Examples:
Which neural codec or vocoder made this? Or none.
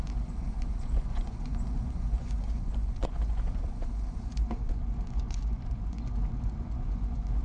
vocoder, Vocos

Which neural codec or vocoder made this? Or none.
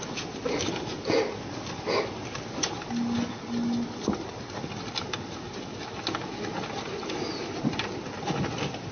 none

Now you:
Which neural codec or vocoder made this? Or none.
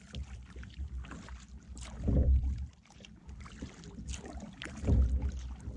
none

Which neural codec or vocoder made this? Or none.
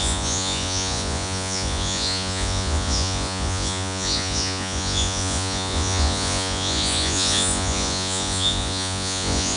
vocoder, Vocos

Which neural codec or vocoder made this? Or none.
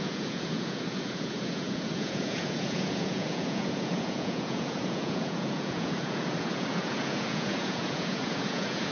vocoder, Vocos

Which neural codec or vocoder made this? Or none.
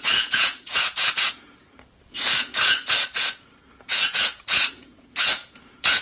vocoder, Vocos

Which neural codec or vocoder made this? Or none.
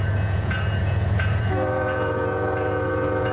vocoder, Vocos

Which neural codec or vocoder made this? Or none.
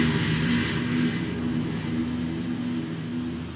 none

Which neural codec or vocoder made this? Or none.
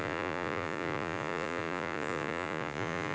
vocoder, Vocos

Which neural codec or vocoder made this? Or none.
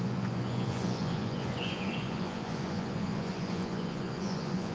vocoder, Vocos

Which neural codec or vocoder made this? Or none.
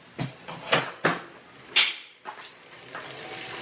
none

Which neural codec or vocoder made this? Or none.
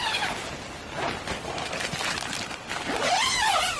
none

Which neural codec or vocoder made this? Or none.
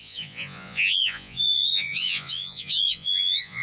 vocoder, Vocos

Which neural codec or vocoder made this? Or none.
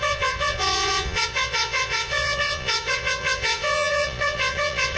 vocoder, Vocos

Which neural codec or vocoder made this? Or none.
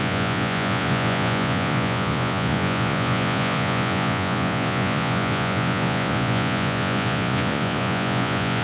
vocoder, Vocos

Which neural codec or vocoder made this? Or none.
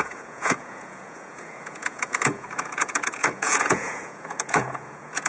vocoder, Vocos